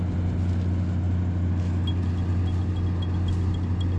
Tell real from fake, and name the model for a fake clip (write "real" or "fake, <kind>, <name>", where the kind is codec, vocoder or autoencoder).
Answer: real